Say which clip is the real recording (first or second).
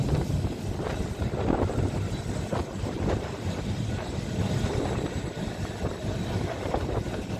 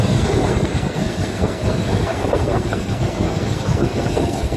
first